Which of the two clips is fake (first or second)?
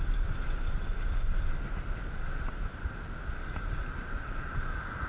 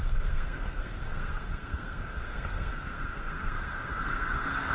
second